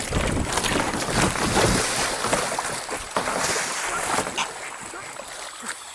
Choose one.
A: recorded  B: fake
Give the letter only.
A